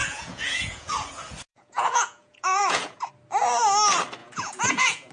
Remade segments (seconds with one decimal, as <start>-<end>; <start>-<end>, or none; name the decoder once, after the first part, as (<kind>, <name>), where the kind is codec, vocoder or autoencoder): 0.0-0.9 (vocoder, Vocos); 1.5-3.1; 4.2-5.1